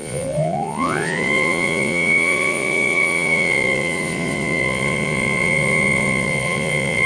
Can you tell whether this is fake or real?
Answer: fake